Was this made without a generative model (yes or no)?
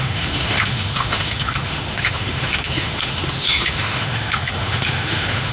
no